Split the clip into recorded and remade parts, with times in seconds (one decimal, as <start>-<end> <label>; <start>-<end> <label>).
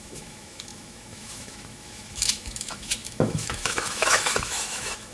0.0-5.1 remade